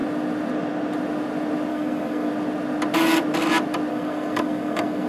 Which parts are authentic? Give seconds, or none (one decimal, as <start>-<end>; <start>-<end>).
0.0-1.7; 2.3-3.9